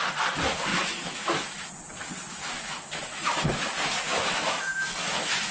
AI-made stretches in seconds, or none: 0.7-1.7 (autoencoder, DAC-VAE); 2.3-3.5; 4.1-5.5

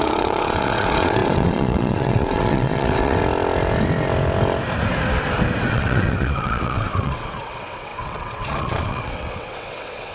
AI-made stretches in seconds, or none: 0.0-3.2 (vocoder, WaveNeXt); 5.7-10.1